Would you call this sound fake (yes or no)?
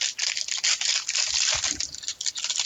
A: no